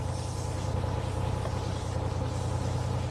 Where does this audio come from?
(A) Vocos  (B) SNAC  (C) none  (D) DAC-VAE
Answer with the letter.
C